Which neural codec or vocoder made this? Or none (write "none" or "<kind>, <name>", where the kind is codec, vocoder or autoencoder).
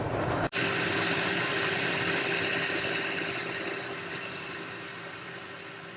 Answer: none